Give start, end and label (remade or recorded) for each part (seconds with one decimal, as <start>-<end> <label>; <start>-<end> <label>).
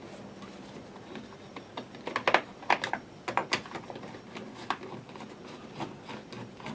0.0-6.7 recorded